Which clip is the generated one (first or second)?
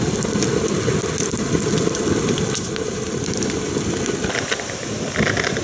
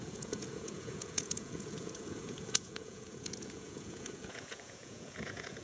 second